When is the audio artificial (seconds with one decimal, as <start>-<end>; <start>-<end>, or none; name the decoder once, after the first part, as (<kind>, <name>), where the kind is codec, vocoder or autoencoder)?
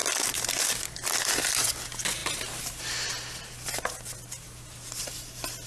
none